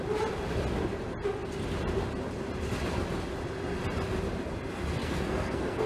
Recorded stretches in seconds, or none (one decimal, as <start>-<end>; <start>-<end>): 0.0-5.0